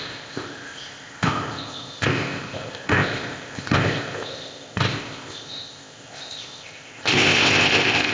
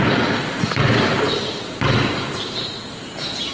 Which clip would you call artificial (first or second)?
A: first